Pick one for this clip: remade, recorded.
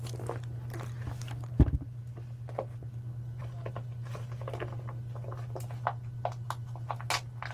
recorded